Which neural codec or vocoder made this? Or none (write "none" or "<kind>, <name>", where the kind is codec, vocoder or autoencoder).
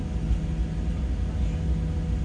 none